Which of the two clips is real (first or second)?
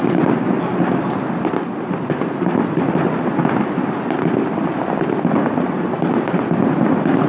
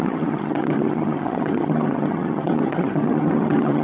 first